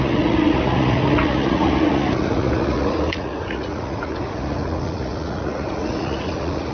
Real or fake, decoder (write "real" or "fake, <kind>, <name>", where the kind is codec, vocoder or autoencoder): fake, vocoder, Vocos